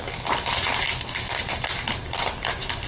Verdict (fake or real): real